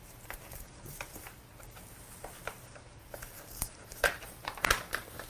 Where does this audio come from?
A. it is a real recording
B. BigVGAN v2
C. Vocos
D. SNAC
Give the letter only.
B